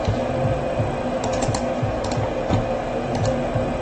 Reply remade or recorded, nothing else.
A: recorded